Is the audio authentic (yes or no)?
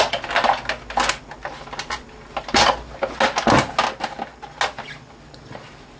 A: yes